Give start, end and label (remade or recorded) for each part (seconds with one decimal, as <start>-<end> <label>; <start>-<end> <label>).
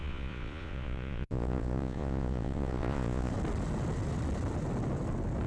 0.0-3.3 remade; 3.3-5.5 recorded